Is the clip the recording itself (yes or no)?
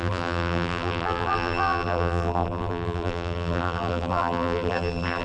no